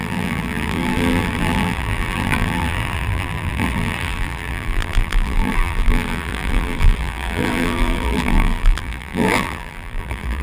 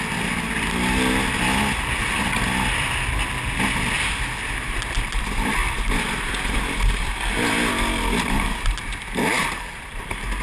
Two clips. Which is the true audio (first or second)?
second